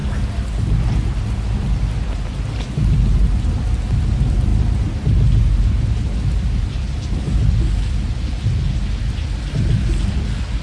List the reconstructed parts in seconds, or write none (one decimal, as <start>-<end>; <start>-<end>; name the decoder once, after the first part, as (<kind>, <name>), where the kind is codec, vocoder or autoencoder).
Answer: none